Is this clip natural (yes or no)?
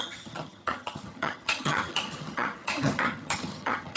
no